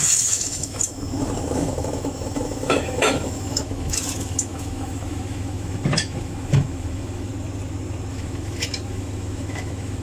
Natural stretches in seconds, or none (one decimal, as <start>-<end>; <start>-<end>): 7.3-8.1